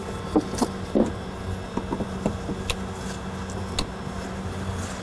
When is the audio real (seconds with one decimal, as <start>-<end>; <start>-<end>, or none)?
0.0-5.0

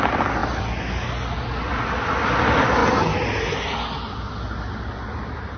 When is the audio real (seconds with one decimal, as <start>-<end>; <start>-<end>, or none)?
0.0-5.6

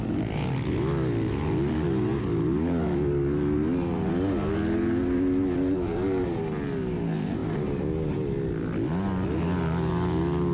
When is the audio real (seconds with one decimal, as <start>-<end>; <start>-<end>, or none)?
0.0-10.5

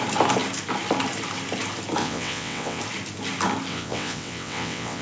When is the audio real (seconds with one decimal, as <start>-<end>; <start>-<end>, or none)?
0.0-2.0; 2.8-3.7